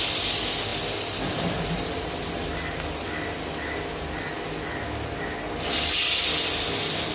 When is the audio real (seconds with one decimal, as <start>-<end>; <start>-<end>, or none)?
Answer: 0.0-7.1